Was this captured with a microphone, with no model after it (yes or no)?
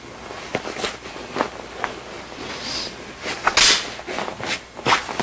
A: yes